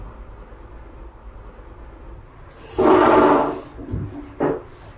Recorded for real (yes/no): yes